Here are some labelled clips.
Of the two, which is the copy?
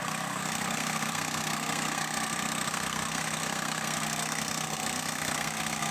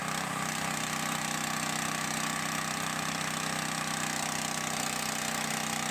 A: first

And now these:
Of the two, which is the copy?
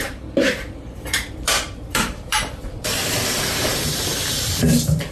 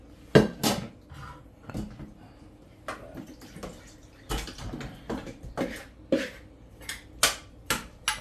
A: first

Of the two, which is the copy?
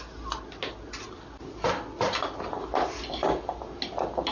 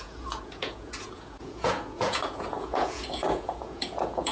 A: second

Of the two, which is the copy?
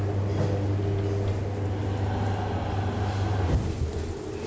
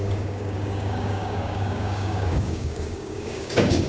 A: second